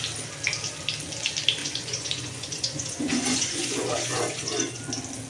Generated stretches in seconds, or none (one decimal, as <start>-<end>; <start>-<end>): 1.6-4.8